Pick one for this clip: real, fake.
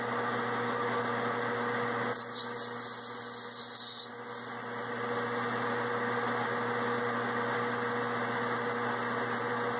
real